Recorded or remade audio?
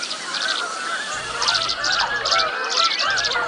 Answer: recorded